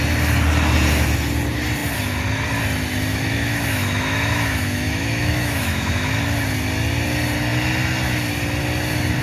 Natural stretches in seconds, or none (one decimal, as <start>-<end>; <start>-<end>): 0.0-3.1; 6.2-9.2